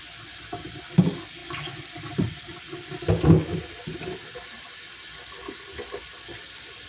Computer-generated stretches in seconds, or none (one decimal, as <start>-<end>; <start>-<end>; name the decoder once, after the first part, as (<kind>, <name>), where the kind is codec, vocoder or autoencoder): none